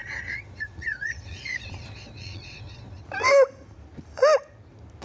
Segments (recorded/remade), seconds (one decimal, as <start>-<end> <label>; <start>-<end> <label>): 0.0-3.0 remade; 3.0-5.0 recorded